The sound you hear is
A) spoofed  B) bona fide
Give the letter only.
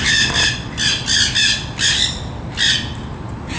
B